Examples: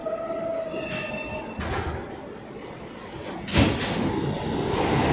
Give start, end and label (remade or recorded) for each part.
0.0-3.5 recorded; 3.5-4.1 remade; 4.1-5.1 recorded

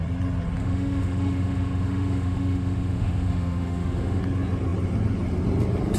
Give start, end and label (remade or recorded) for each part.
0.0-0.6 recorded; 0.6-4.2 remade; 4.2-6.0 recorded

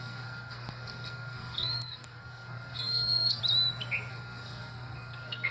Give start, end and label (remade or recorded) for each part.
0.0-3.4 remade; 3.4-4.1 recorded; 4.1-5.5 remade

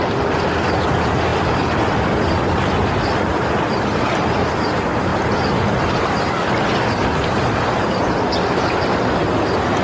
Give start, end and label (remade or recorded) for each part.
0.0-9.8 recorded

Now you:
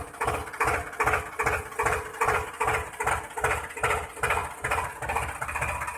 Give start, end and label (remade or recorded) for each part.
0.0-2.1 recorded; 2.1-3.1 remade; 3.1-4.4 recorded; 4.4-4.9 remade; 4.9-6.0 recorded